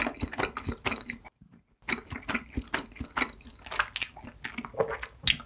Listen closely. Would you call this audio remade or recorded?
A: recorded